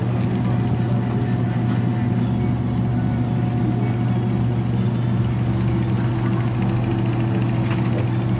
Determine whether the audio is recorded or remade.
recorded